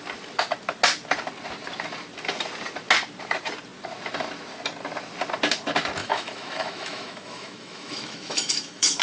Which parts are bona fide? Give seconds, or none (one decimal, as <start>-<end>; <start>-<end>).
0.0-6.0